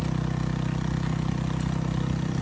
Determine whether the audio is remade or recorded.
recorded